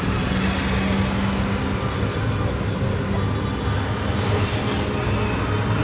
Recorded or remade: recorded